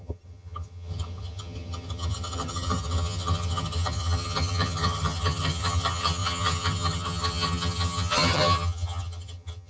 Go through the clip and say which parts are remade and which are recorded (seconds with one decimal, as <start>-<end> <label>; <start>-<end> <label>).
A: 0.0-9.7 remade